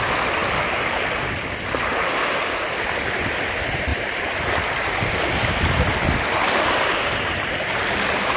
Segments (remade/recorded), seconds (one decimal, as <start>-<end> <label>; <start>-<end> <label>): 0.0-0.4 remade; 0.4-3.1 recorded; 3.1-8.4 remade